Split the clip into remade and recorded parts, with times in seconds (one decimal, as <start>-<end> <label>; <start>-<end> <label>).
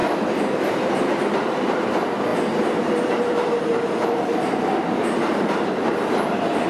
0.0-2.3 remade; 2.3-3.0 recorded; 3.0-6.7 remade